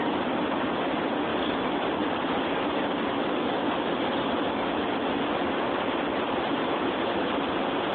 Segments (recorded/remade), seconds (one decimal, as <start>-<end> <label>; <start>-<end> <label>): 0.0-1.3 recorded; 1.3-2.3 remade; 2.3-5.0 recorded; 5.0-6.4 remade; 6.4-7.9 recorded